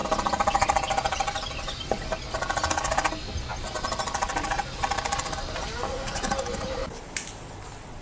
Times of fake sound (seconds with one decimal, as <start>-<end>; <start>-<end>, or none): 0.0-1.8; 3.5-6.3

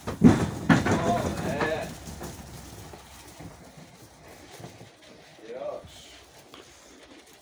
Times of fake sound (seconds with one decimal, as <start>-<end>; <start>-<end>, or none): 1.3-3.9; 5.3-5.9

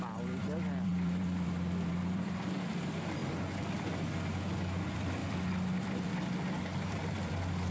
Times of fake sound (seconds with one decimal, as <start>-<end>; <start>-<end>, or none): 0.0-3.2; 4.8-7.7